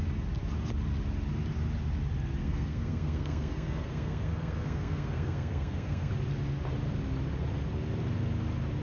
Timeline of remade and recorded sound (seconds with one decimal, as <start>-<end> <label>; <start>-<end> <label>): 0.0-2.4 recorded; 2.4-6.1 remade; 6.1-8.8 recorded